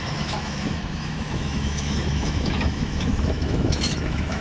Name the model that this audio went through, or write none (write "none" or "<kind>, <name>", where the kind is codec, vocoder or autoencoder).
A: autoencoder, DAC-VAE